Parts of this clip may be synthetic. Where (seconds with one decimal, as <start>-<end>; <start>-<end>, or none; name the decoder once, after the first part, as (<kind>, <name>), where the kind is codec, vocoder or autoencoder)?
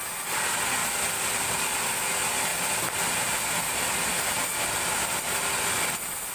none